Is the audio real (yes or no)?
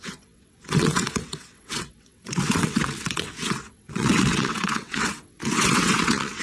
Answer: no